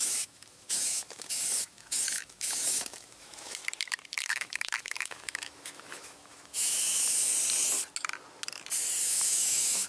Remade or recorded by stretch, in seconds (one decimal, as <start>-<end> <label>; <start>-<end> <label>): 0.0-3.6 remade; 3.6-4.2 recorded; 4.2-7.3 remade; 7.3-9.0 recorded; 9.0-9.9 remade